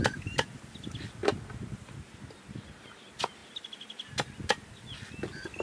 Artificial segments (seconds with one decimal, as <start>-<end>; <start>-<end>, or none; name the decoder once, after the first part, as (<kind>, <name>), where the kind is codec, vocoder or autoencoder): none